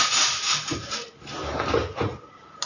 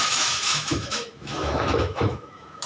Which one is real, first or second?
first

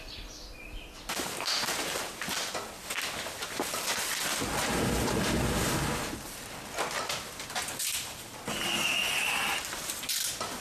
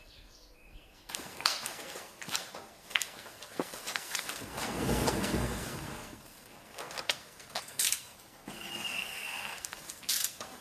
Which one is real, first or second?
first